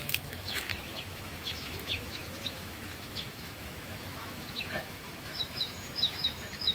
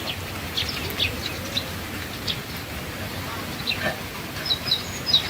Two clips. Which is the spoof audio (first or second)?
first